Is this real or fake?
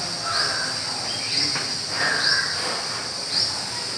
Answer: real